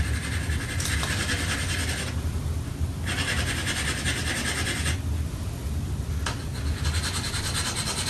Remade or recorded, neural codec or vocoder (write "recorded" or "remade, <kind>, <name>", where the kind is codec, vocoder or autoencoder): recorded